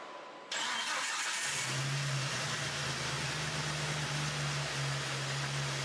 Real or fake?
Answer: real